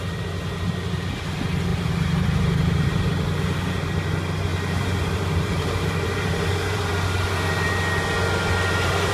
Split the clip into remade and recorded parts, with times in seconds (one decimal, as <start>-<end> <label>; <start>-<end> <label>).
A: 0.0-1.7 recorded; 1.7-3.0 remade; 3.0-4.5 recorded; 4.5-6.9 remade; 6.9-9.1 recorded